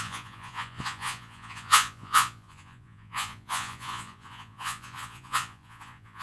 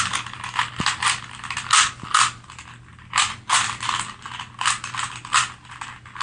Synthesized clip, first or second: first